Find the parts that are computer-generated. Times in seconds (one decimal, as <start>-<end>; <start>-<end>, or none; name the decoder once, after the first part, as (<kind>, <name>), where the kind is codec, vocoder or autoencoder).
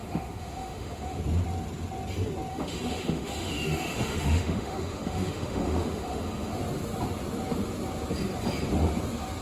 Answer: 0.0-1.2 (autoencoder, DAC-VAE); 2.5-6.6